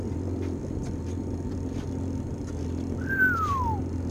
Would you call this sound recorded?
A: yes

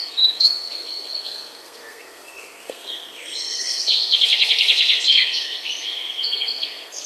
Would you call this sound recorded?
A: no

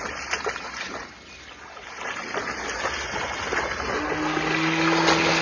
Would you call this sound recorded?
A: yes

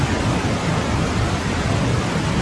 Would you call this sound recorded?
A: yes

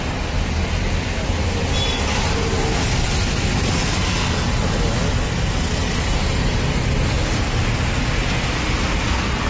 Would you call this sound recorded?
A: yes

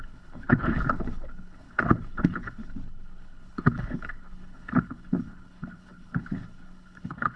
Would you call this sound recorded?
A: no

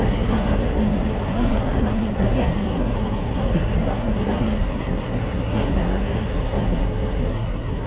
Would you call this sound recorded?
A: no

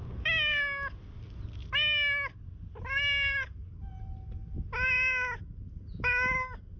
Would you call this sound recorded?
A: yes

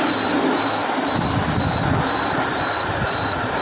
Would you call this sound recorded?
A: no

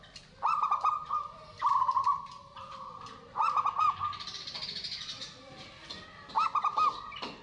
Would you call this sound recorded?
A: no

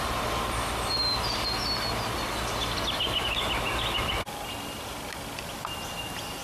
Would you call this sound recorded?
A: yes